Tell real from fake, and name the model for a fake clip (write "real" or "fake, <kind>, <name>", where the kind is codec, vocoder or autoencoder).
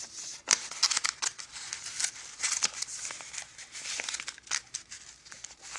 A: real